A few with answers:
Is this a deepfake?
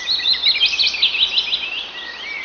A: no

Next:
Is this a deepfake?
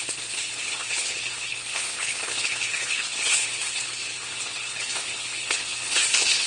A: yes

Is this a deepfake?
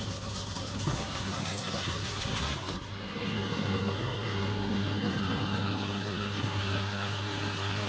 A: yes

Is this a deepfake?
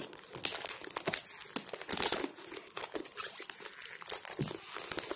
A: no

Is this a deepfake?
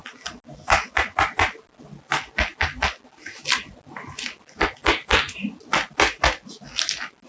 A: no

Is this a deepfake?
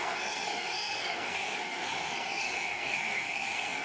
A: yes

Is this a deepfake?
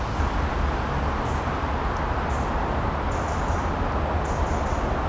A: no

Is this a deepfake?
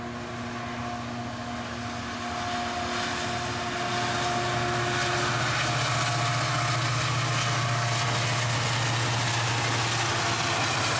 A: no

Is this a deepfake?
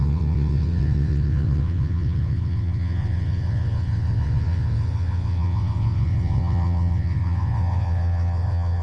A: yes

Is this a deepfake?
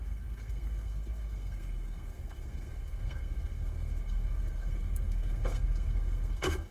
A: yes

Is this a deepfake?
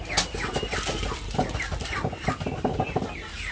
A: no